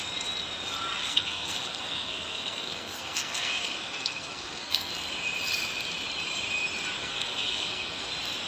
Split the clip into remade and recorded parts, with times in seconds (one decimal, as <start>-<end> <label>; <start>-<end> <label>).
0.0-1.0 recorded; 1.0-4.9 remade; 4.9-7.0 recorded; 7.0-8.1 remade; 8.1-8.5 recorded